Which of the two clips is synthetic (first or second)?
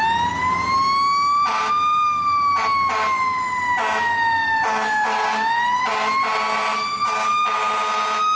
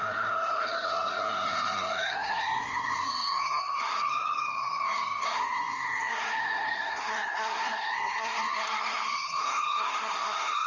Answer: second